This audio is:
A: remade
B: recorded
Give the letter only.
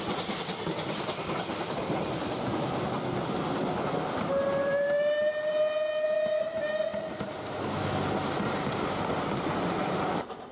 B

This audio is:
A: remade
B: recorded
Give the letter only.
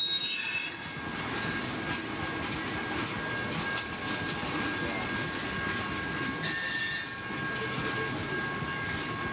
B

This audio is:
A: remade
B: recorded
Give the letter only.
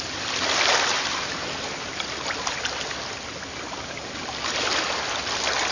B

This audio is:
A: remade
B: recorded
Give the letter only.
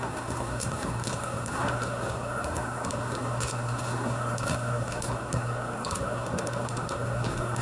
A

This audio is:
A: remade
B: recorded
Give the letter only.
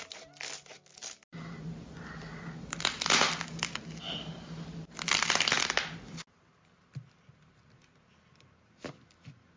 B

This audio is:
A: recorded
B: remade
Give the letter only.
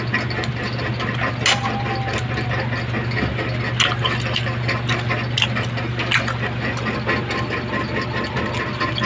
A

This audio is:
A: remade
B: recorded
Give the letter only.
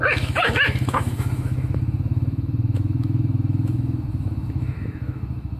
A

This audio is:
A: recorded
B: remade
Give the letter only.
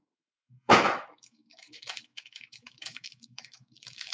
B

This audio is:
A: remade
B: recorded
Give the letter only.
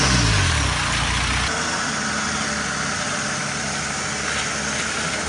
B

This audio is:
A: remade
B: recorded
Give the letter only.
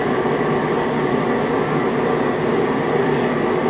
B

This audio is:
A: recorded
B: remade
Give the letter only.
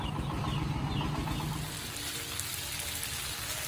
A